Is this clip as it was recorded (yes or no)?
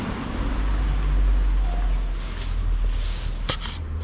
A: yes